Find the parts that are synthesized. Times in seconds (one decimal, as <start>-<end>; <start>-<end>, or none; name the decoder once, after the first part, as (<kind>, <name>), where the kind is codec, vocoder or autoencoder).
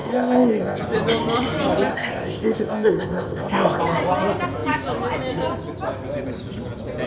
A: 0.0-0.8 (codec, ZipCodec); 1.9-3.8